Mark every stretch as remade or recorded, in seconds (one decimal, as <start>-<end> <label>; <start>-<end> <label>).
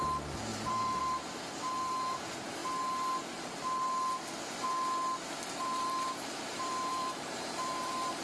0.0-2.6 remade; 2.6-5.5 recorded; 5.5-8.2 remade